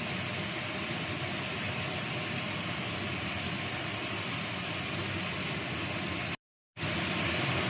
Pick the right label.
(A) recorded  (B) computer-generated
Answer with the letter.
A